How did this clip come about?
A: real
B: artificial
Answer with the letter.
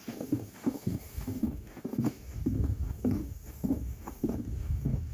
B